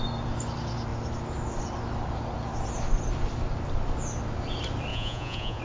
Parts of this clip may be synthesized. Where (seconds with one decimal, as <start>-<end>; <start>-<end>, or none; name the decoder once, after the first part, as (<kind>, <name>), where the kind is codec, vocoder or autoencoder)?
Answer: 4.9-5.6 (vocoder, Vocos)